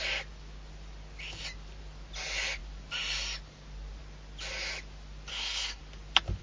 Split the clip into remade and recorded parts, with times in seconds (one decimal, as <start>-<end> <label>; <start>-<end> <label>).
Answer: 0.0-5.3 recorded; 5.3-5.8 remade; 5.8-6.4 recorded